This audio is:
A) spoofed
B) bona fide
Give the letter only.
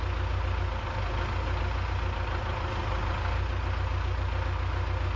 B